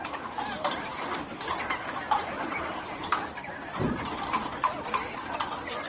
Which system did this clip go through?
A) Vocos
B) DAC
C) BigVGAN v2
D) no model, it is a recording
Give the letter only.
D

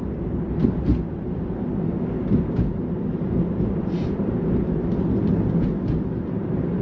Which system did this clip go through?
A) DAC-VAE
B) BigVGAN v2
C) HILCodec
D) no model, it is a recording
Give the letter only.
D